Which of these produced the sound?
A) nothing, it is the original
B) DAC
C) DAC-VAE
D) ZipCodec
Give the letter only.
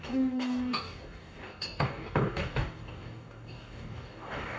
B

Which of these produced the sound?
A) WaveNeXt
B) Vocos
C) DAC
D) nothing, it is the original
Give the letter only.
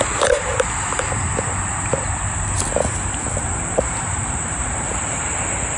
D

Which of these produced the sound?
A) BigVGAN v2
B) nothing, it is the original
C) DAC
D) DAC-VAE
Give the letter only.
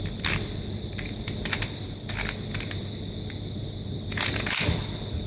B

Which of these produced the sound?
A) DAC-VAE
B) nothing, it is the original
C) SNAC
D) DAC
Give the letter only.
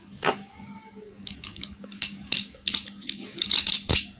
D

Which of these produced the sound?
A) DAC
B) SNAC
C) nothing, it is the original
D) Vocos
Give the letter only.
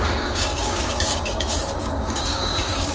A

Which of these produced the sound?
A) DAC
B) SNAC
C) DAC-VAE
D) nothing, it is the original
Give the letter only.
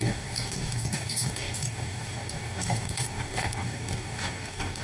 A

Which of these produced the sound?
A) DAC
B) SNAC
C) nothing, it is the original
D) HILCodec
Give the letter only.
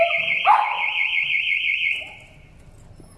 C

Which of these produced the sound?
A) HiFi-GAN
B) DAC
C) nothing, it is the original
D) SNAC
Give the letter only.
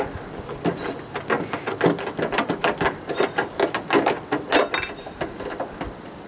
C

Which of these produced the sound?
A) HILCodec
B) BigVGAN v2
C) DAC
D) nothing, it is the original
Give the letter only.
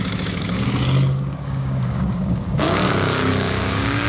C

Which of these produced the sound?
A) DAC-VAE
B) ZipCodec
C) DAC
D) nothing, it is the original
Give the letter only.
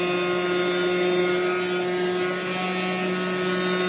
D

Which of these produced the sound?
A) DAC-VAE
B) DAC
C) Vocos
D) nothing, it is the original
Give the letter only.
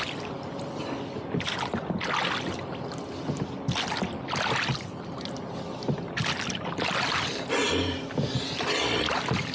D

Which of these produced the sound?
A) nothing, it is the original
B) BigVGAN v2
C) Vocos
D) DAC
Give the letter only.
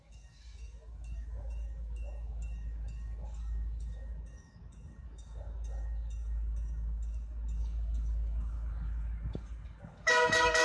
D